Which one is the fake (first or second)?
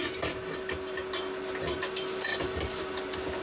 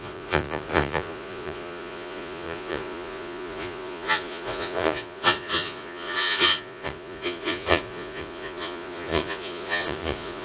second